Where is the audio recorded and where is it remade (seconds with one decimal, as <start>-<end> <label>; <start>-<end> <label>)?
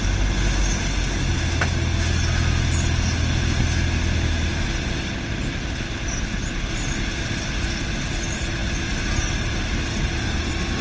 0.0-10.8 recorded